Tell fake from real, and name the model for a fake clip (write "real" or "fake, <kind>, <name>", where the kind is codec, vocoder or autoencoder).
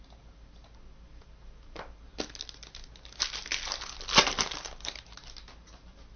real